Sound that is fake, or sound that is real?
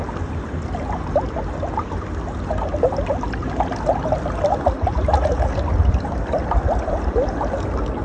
real